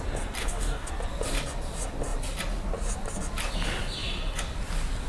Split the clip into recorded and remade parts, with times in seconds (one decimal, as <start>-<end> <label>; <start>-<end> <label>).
0.0-0.4 recorded; 0.4-0.9 remade; 0.9-5.1 recorded